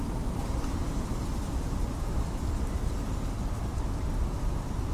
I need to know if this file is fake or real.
real